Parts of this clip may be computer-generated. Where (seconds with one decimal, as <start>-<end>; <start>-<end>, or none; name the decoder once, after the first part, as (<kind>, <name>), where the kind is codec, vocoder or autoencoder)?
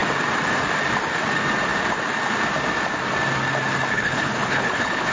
3.9-5.1 (codec, HILCodec)